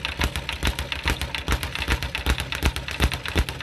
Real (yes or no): yes